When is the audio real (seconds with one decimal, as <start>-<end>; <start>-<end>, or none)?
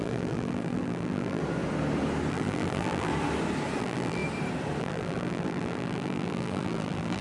1.4-2.3; 3.1-3.8; 4.2-4.8